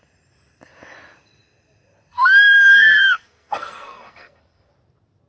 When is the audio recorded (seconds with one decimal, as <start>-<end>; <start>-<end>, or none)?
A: 0.0-2.1; 4.7-5.3